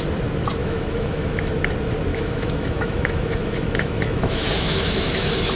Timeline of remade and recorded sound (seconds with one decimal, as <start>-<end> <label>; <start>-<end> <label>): 0.0-0.6 recorded; 0.6-1.5 remade; 1.5-2.1 recorded; 2.1-5.6 remade